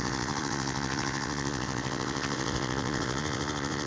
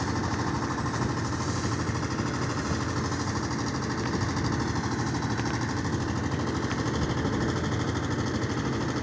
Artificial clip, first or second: first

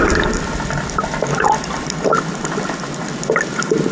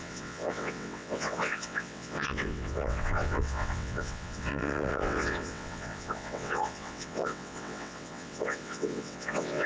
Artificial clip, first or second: second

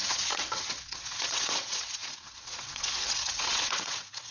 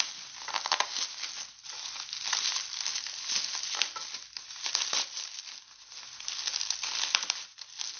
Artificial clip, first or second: first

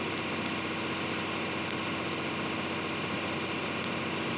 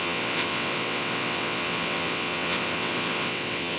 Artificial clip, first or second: second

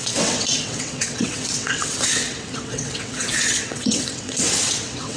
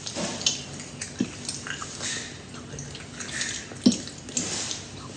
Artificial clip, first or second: first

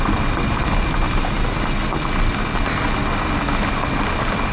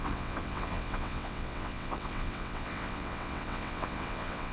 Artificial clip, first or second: second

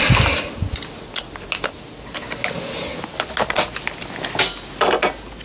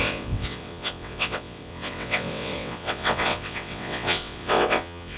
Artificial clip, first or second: second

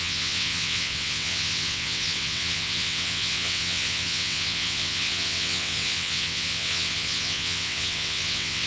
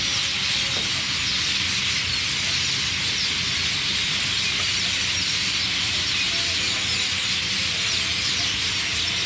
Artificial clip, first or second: first